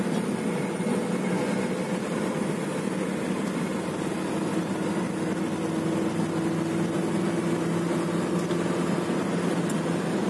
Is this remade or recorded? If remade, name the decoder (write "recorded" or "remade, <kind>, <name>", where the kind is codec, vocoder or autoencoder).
recorded